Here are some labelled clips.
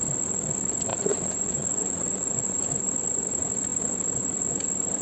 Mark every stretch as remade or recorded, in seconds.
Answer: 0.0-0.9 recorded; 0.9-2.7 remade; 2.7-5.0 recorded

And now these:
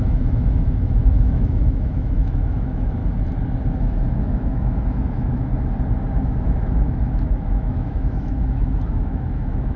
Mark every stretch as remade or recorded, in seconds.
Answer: 0.0-3.0 remade; 3.0-3.8 recorded; 3.8-5.5 remade; 5.5-6.1 recorded; 6.1-9.8 remade

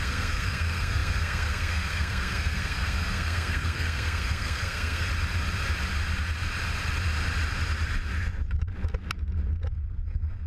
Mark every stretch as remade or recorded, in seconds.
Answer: 0.0-5.1 remade; 5.1-9.7 recorded; 9.7-10.5 remade

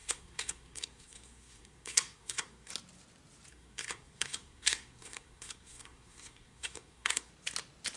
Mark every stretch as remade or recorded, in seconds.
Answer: 0.0-2.7 remade; 2.7-3.5 recorded; 3.5-7.3 remade; 7.3-8.0 recorded

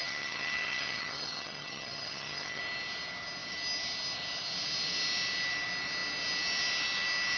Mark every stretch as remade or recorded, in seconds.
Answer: 0.0-2.6 remade; 2.6-7.4 recorded